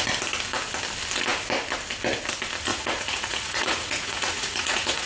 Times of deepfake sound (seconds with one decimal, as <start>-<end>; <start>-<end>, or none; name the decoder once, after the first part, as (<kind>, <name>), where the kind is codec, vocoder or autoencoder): 2.7-5.1 (vocoder, Vocos)